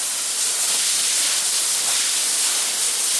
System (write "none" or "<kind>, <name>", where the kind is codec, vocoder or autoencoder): none